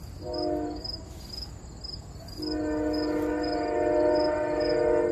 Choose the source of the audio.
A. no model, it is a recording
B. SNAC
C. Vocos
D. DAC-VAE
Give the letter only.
A